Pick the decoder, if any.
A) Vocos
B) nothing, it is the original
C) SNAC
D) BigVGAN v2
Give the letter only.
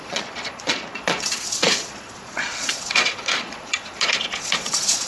A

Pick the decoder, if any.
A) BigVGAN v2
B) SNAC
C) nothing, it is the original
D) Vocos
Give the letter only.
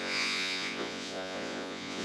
D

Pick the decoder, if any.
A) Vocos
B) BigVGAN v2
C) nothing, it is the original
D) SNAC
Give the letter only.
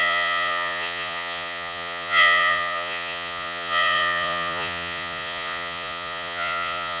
A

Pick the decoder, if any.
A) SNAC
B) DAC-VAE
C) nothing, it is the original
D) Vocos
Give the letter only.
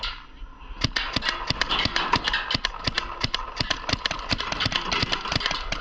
C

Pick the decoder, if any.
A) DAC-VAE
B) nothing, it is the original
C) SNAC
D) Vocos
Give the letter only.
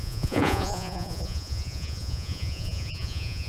D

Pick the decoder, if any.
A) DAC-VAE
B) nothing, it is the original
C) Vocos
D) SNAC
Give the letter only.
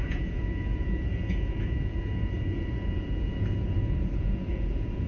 C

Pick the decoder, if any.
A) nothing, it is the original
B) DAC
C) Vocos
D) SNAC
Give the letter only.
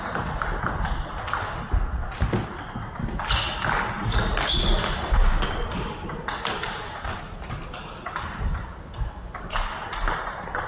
A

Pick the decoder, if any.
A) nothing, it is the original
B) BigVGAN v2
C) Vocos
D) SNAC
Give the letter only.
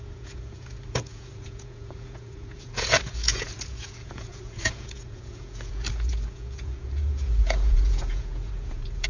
C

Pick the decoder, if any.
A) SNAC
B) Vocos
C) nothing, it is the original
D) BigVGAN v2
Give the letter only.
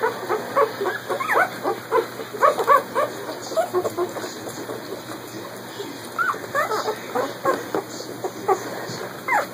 C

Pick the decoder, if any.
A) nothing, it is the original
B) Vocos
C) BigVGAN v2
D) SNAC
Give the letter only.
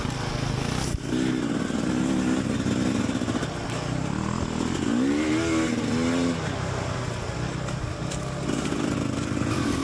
A